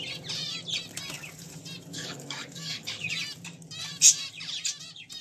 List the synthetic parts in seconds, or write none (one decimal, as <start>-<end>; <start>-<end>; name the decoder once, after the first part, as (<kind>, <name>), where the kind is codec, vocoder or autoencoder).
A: 1.9-3.1 (codec, DAC)